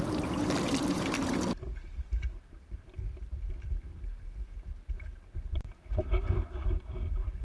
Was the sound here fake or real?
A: fake